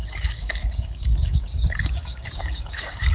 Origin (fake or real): fake